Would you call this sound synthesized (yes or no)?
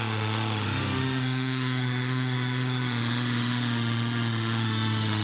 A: yes